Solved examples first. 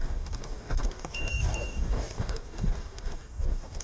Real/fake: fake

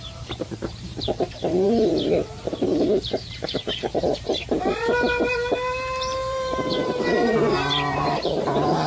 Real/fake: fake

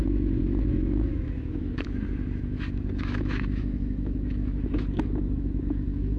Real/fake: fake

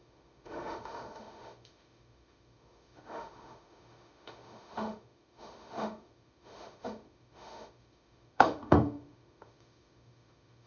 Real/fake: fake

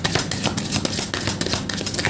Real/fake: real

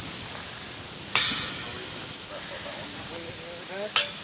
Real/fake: real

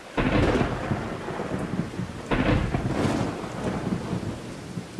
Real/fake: real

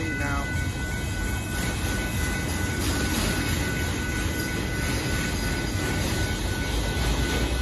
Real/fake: real